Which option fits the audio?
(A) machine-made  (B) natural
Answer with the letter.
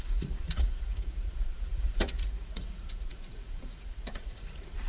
A